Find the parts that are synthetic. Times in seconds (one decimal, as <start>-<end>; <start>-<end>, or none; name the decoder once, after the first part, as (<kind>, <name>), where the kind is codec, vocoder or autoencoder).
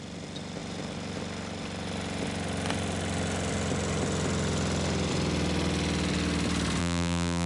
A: 6.8-7.5 (vocoder, BigVGAN v2)